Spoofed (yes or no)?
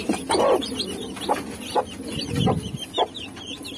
no